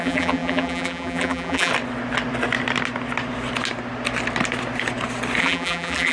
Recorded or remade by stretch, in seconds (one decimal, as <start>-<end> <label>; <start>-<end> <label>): 0.0-1.7 remade; 1.7-5.4 recorded; 5.4-6.1 remade